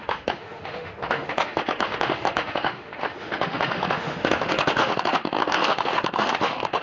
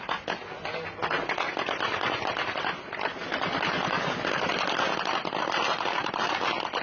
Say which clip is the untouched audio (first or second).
second